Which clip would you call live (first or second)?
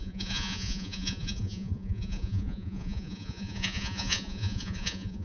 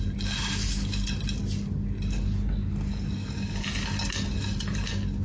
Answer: second